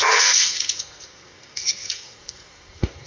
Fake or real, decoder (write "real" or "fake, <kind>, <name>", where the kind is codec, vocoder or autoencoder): fake, codec, SNAC